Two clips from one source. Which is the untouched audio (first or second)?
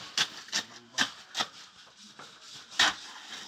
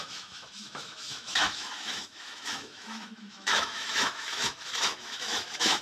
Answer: first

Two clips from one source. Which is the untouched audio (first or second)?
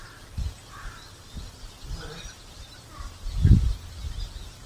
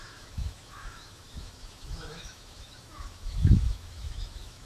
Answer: first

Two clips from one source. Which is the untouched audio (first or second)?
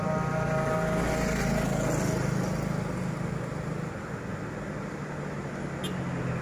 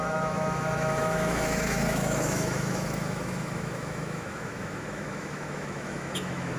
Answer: first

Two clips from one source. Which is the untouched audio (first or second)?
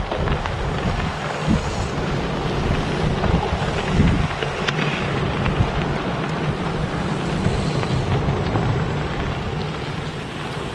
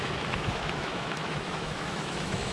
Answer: first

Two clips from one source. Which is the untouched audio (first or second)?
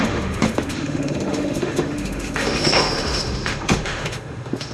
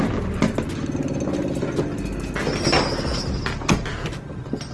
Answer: second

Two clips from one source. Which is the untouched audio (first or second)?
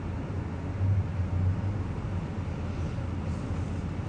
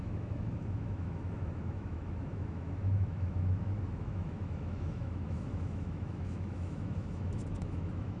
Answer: first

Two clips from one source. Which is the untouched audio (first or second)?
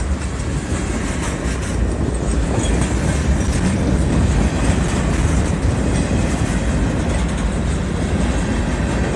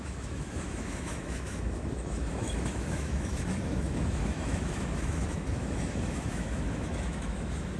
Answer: first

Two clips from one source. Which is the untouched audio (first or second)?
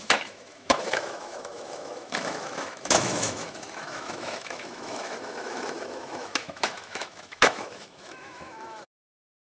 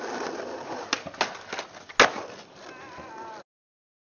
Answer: second